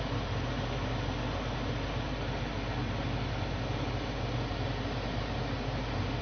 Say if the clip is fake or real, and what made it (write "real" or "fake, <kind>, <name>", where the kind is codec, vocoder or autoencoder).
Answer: real